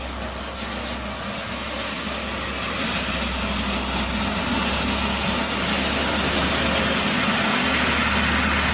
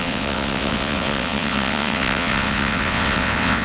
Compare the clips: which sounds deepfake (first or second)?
second